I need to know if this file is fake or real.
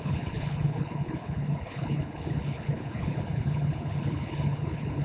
fake